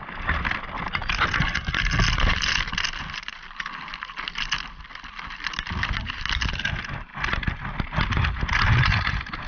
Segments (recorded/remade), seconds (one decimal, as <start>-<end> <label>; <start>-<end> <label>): 0.0-9.5 recorded

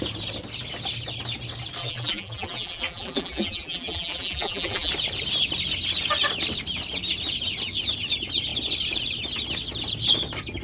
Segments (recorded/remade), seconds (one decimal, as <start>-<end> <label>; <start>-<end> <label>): 0.0-1.8 recorded; 1.8-4.9 remade; 4.9-10.6 recorded